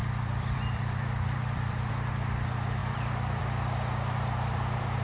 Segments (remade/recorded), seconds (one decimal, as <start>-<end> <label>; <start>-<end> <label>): 0.0-1.9 remade; 1.9-2.8 recorded; 2.8-3.4 remade; 3.4-5.0 recorded